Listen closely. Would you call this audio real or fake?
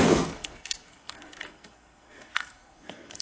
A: fake